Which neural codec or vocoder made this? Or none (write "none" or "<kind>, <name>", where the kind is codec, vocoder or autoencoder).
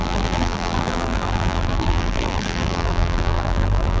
vocoder, BigVGAN v2